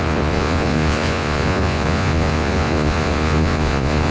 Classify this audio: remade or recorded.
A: remade